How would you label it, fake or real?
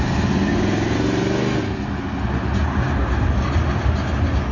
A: real